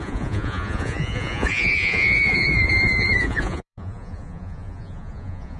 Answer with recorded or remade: remade